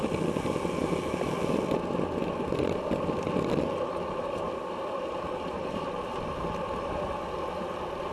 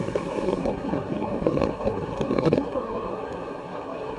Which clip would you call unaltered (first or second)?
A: first